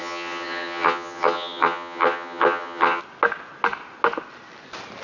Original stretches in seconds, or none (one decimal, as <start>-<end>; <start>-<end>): 3.0-5.0